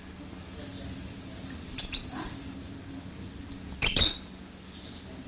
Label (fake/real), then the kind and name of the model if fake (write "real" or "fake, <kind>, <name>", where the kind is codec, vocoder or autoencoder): real